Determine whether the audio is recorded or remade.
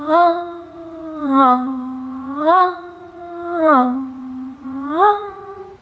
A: remade